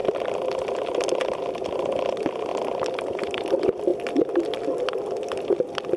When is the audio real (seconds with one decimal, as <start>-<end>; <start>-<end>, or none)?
0.0-2.5; 3.5-6.0